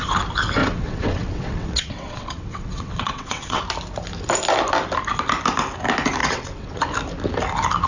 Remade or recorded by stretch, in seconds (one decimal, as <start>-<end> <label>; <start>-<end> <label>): 0.0-0.6 recorded; 0.6-3.6 remade; 3.6-6.2 recorded; 6.2-6.8 remade; 6.8-7.9 recorded